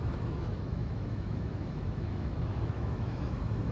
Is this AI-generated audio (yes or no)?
yes